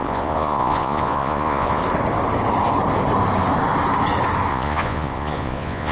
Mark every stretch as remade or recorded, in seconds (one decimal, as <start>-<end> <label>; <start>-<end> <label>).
0.0-1.8 remade; 1.8-4.5 recorded; 4.5-5.9 remade